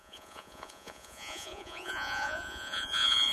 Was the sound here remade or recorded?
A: remade